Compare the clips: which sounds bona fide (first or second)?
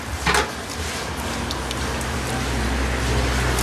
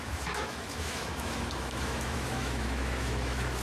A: first